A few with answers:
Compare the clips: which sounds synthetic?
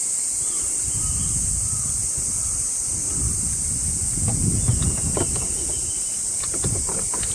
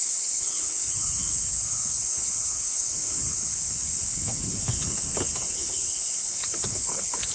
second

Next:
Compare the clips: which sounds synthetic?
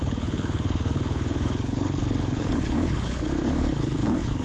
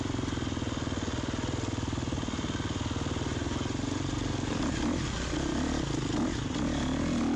first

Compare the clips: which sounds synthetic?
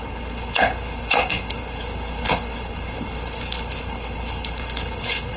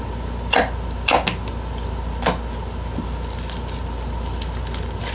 first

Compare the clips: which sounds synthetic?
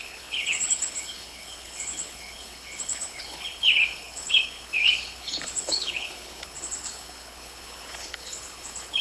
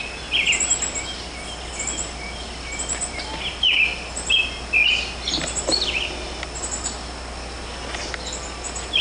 first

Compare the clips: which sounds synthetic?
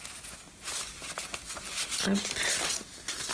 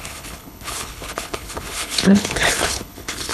second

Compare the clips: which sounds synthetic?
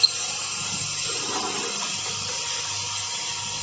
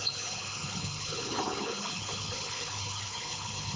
second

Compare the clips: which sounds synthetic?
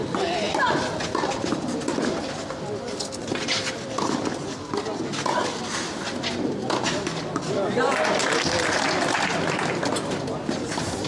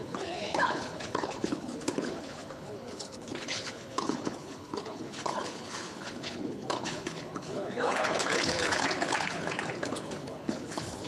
second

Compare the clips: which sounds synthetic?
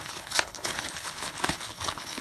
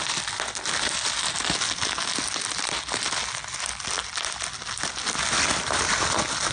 first